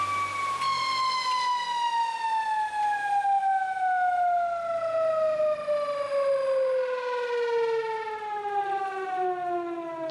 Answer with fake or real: real